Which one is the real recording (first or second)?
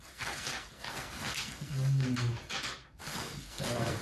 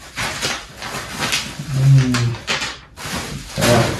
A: second